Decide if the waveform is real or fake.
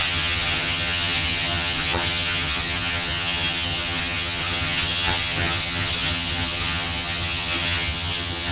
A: fake